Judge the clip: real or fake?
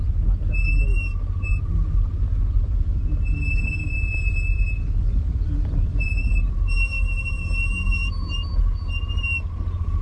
real